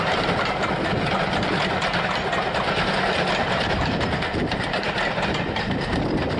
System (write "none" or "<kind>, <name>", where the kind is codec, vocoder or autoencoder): none